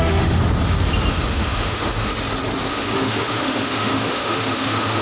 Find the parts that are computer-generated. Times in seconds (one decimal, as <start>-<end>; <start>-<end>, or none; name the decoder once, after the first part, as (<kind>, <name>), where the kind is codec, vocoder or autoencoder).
0.0-0.4 (autoencoder, DAC-VAE); 1.1-2.1; 2.7-5.0